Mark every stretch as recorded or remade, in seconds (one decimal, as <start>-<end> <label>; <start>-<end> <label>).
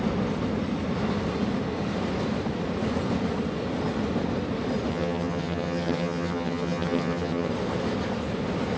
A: 0.0-4.9 recorded; 4.9-7.5 remade; 7.5-8.8 recorded